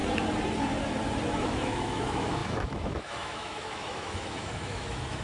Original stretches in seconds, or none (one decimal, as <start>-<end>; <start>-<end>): 0.0-1.4